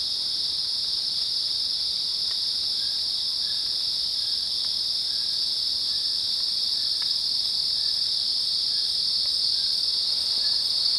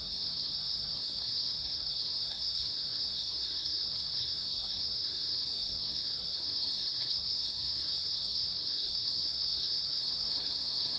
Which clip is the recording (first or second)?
first